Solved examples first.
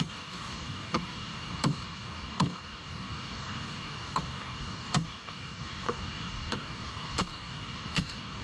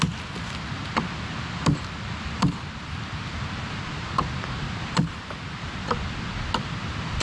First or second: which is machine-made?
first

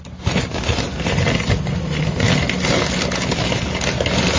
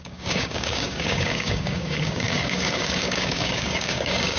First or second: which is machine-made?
second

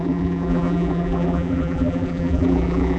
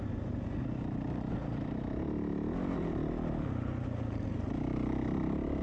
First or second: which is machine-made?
first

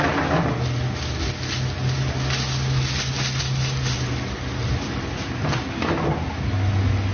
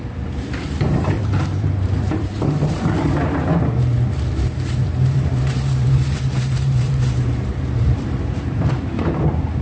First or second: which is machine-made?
second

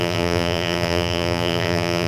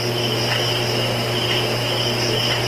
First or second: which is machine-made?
first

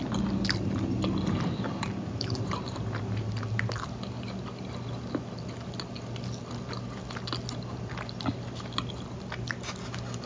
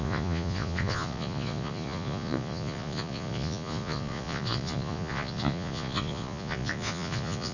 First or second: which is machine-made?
second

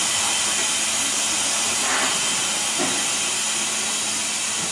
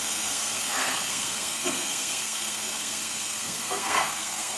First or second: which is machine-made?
second